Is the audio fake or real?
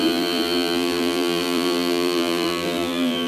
fake